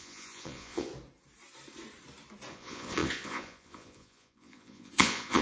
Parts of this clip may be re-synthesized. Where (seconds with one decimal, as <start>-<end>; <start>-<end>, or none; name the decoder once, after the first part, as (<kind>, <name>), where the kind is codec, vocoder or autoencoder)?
0.0-0.9 (vocoder, Vocos); 2.5-5.4